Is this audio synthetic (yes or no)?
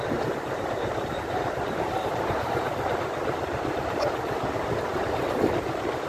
yes